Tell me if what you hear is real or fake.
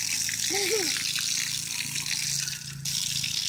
real